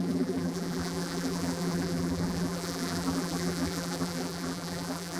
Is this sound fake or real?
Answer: fake